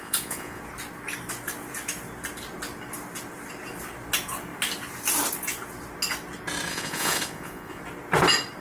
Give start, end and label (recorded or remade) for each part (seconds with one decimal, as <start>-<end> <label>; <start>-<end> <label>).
0.0-0.6 remade; 0.6-6.7 recorded; 6.7-7.8 remade; 7.8-8.6 recorded